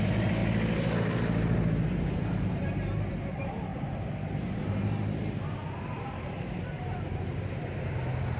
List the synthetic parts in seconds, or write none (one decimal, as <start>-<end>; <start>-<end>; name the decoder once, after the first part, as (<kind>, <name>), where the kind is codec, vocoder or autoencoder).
0.0-0.4 (vocoder, BigVGAN v2); 2.0-8.4